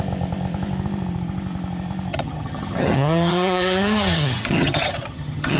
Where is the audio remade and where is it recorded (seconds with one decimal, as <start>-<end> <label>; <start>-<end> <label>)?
0.0-2.1 recorded; 2.1-5.6 remade